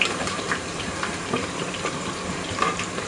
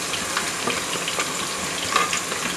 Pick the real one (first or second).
second